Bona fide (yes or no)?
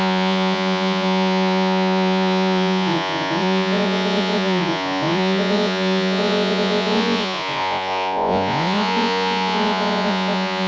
no